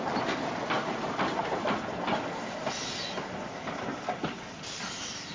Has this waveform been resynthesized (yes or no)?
no